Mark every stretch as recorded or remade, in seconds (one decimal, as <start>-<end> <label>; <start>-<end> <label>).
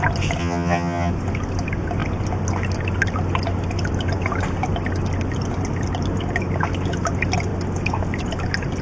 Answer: 0.0-0.4 recorded; 0.4-1.1 remade; 1.1-8.8 recorded